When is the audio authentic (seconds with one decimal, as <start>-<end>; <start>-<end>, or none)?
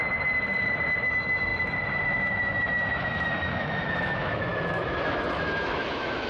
0.0-1.0